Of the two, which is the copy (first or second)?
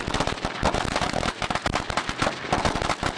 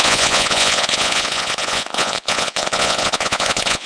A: second